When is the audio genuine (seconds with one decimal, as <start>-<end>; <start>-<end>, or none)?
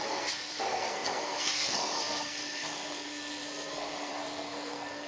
none